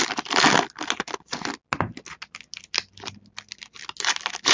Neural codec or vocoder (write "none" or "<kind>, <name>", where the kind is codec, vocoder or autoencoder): none